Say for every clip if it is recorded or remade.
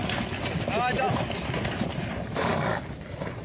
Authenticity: recorded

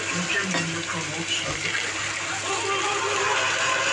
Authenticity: recorded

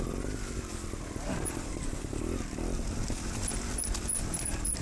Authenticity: recorded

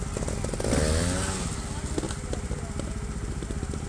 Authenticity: recorded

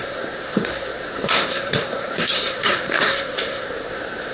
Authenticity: remade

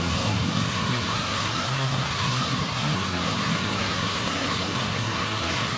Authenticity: remade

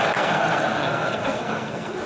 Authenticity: remade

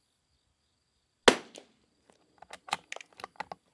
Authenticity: recorded